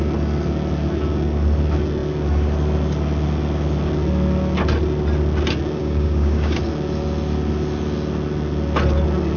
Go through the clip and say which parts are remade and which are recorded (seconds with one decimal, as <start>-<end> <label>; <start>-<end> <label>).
0.0-5.8 recorded; 5.8-6.6 remade; 6.6-9.4 recorded